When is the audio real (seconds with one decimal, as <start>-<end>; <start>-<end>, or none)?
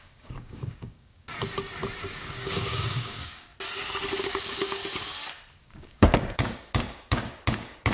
1.3-2.1; 3.5-4.2; 4.8-5.6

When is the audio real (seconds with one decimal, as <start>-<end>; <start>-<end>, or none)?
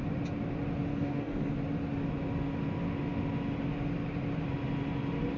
0.0-0.9; 1.5-5.4